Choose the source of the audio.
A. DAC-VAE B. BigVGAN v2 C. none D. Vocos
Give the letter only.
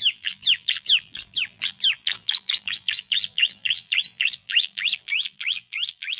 B